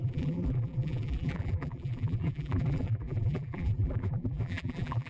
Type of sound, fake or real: fake